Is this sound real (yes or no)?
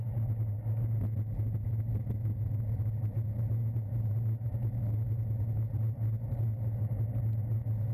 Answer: yes